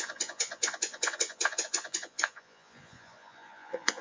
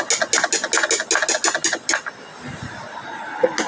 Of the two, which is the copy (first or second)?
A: first